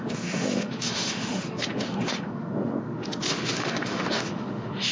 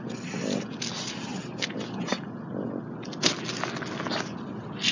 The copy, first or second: first